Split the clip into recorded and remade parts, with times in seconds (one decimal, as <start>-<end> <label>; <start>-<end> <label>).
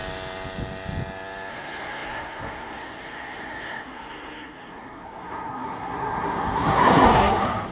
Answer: 0.0-1.5 recorded; 1.5-7.7 remade